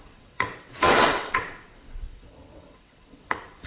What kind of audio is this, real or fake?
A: fake